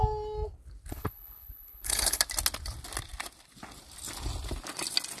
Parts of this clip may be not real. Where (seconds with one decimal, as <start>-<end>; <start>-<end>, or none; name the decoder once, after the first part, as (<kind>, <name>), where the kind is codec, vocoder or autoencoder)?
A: 0.9-2.2 (codec, HILCodec)